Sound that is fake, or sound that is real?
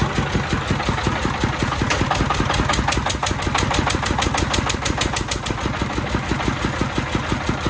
real